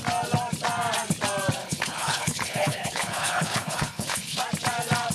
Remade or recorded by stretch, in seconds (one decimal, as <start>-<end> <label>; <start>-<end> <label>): 0.0-1.6 recorded; 1.6-4.4 remade; 4.4-5.1 recorded